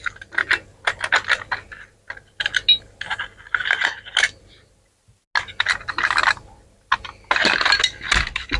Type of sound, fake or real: real